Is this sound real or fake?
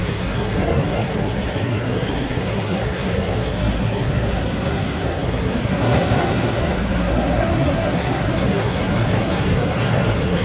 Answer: fake